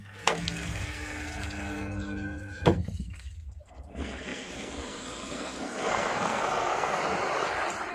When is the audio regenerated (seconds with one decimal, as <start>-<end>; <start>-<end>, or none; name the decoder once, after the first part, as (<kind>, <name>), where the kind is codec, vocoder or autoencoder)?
0.0-7.0 (codec, SNAC)